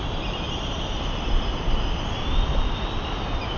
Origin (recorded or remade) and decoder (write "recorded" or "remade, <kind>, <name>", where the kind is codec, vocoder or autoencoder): recorded